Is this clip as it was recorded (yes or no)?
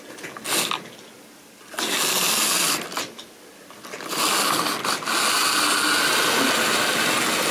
yes